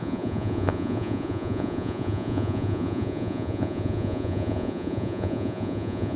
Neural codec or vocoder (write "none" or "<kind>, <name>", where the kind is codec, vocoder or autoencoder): vocoder, Vocos